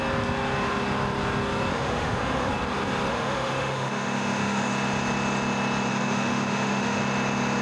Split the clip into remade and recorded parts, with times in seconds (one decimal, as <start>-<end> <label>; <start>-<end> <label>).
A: 0.0-1.7 recorded; 1.7-2.5 remade; 2.5-3.1 recorded; 3.1-4.7 remade; 4.7-5.9 recorded; 5.9-7.0 remade; 7.0-7.6 recorded